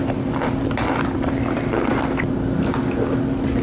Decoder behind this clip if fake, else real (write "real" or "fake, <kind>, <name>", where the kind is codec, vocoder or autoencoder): real